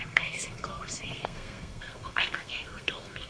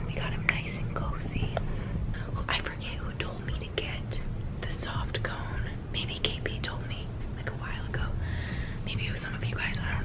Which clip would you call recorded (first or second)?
second